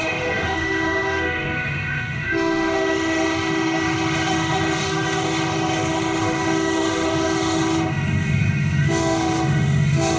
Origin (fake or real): fake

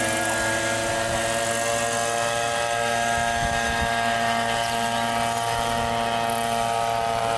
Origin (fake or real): real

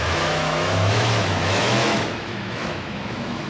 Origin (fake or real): fake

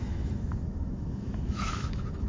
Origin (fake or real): fake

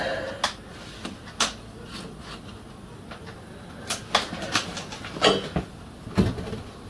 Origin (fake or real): real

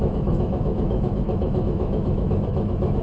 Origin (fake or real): fake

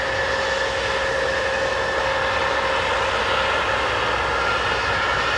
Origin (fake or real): real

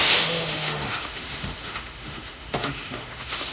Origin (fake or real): fake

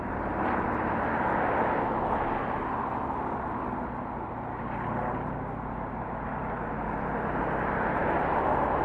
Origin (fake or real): real